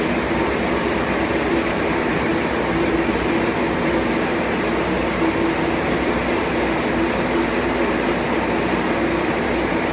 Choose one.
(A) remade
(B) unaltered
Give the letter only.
A